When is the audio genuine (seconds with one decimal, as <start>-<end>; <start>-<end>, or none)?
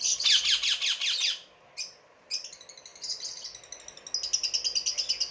0.0-5.3